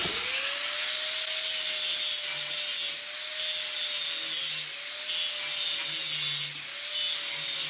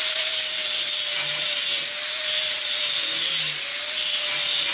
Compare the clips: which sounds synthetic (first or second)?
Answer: second